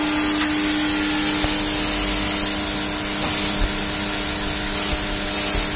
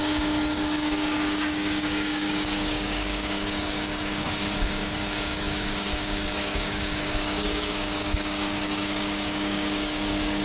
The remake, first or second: second